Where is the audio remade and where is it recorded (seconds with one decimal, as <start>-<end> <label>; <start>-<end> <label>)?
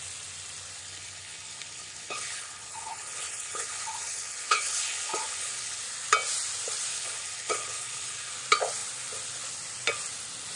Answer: 0.0-0.8 recorded; 0.8-5.8 remade; 5.8-6.9 recorded; 6.9-8.3 remade; 8.3-10.6 recorded